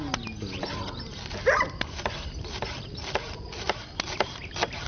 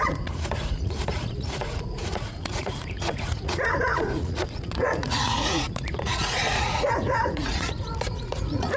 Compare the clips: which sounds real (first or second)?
first